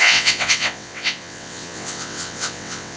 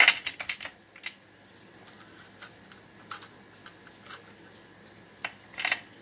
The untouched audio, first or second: second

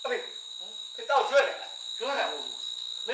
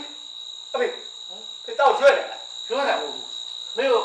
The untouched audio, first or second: second